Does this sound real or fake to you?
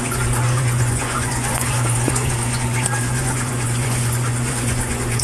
fake